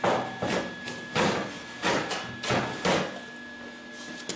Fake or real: real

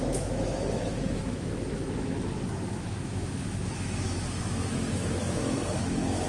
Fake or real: fake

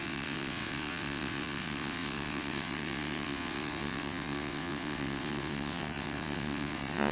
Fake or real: fake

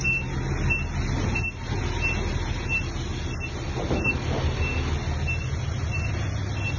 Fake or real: real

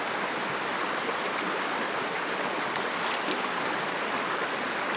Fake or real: real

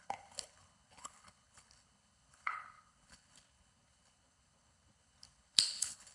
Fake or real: fake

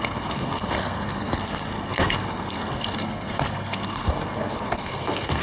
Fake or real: fake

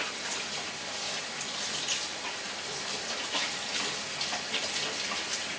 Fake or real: real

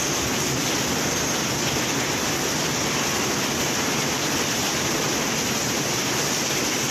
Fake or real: fake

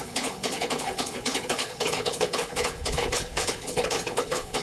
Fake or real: fake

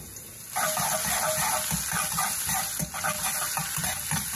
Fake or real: real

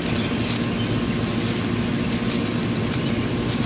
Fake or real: real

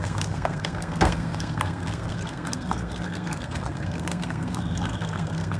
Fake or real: fake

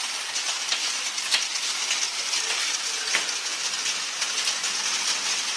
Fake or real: real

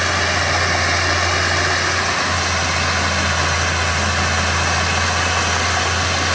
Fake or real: real